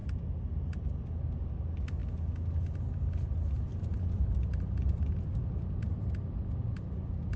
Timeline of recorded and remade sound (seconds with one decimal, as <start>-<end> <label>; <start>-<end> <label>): 0.0-3.7 recorded; 3.7-7.4 remade